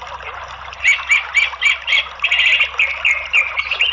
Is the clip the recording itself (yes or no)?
yes